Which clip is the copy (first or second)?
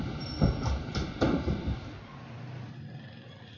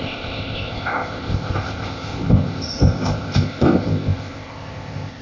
second